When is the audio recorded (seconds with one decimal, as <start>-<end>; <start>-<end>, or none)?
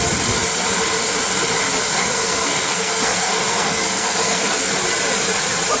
0.0-1.9; 4.7-5.8